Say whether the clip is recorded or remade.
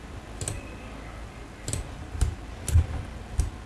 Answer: recorded